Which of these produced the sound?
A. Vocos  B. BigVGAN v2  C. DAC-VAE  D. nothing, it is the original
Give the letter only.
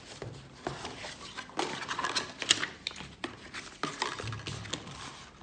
D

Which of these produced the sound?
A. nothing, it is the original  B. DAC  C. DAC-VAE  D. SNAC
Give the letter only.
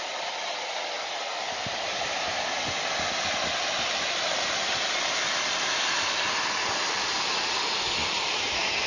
A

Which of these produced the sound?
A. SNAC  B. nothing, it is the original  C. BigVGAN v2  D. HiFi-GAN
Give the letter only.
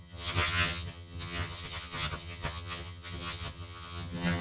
D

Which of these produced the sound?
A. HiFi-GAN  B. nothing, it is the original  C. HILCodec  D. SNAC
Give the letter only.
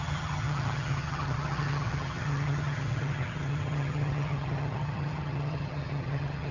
A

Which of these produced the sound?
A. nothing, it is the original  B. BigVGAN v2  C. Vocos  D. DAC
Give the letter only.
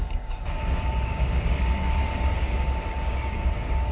D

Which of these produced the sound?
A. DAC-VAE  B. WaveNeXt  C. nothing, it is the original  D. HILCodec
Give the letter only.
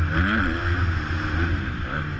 C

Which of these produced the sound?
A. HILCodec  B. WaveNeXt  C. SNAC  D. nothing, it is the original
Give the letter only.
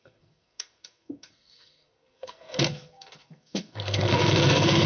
C